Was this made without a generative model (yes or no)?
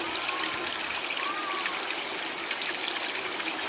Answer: yes